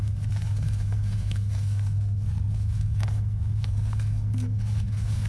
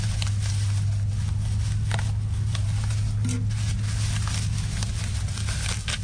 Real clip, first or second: second